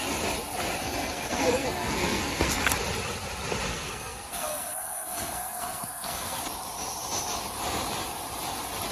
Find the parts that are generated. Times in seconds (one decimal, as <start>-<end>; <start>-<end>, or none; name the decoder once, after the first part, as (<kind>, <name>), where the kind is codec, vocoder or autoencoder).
0.8-2.6 (codec, SNAC); 3.7-6.4